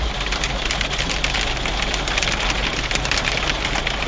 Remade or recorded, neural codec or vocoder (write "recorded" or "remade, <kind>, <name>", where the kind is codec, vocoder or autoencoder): recorded